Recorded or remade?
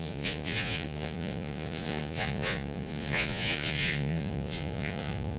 remade